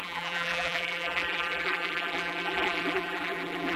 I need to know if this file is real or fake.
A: fake